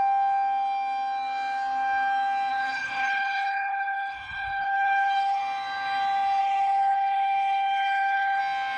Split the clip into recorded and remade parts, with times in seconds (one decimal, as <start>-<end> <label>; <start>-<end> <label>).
0.0-2.5 recorded; 2.5-5.4 remade; 5.4-6.4 recorded; 6.4-8.4 remade; 8.4-8.8 recorded